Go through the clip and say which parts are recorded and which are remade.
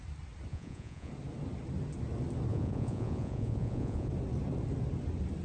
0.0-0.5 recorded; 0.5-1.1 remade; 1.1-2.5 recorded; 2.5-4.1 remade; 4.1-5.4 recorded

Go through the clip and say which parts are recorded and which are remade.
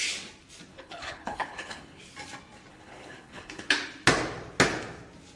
0.0-0.7 recorded; 0.7-2.0 remade; 2.0-2.7 recorded; 2.7-3.6 remade; 3.6-5.4 recorded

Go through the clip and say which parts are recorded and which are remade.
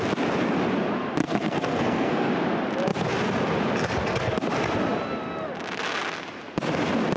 0.0-1.2 recorded; 1.2-2.3 remade; 2.3-7.2 recorded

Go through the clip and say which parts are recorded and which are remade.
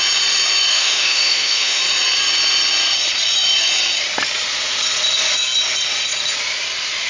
0.0-0.7 recorded; 0.7-1.8 remade; 1.8-7.1 recorded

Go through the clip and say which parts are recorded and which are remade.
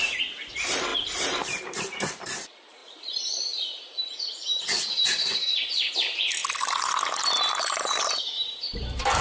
0.0-6.4 remade; 6.4-7.6 recorded; 7.6-9.2 remade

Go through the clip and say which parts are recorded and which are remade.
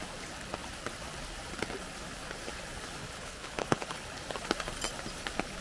0.0-3.0 recorded; 3.0-4.0 remade; 4.0-5.6 recorded